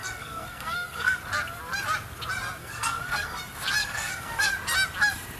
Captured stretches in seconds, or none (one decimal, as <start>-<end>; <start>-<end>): 1.2-2.6; 3.4-3.8; 4.5-5.4